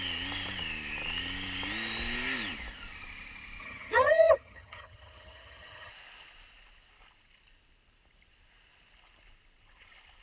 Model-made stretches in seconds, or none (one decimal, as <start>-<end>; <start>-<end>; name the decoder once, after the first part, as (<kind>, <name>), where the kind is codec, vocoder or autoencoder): 3.6-5.9 (vocoder, HiFi-GAN)